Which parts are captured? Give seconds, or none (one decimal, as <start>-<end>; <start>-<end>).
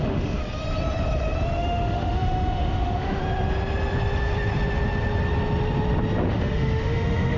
0.4-1.6; 3.2-6.3